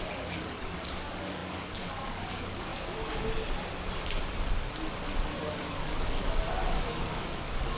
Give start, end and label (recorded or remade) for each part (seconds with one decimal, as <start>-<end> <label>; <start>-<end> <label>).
0.0-2.7 remade; 2.7-5.4 recorded; 5.4-6.2 remade; 6.2-6.9 recorded; 6.9-7.8 remade